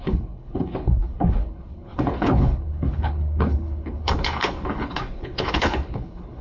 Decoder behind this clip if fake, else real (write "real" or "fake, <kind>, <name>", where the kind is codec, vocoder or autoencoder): fake, codec, HILCodec